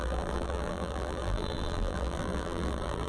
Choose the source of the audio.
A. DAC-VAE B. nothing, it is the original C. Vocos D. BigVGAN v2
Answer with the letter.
D